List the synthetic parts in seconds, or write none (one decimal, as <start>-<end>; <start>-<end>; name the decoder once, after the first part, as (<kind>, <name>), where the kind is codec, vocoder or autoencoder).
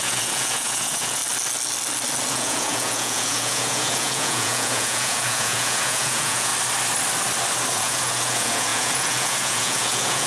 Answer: 0.0-1.2 (vocoder, Vocos); 2.3-6.5; 7.7-10.3